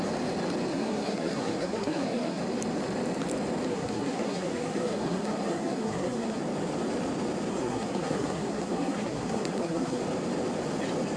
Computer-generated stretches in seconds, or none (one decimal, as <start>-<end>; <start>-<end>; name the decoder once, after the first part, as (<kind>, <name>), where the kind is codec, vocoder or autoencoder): 0.7-2.4 (codec, SNAC); 3.7-6.4; 7.5-10.0